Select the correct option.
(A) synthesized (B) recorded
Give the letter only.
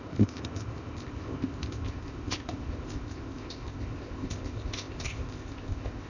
A